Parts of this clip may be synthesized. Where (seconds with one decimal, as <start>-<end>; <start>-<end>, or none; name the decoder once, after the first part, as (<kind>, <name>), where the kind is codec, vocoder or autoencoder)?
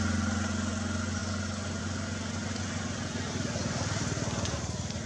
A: 3.6-4.6 (vocoder, BigVGAN v2)